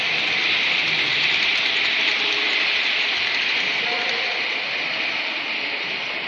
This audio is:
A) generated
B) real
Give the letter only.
B